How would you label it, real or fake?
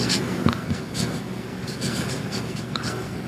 fake